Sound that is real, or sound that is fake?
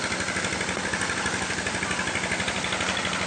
real